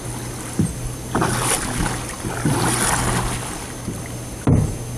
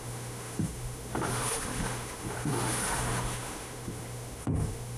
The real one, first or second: first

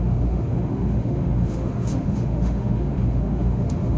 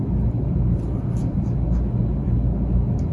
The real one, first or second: second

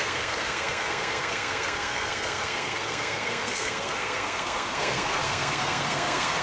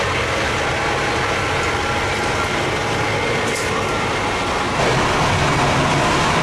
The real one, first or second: second